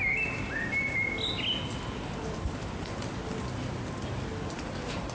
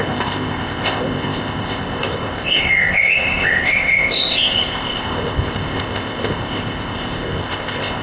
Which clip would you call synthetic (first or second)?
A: second